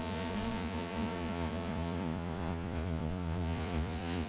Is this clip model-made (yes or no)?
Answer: yes